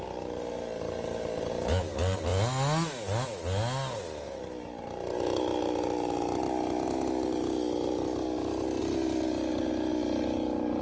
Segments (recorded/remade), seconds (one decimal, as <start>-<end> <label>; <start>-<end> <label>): 0.0-10.8 recorded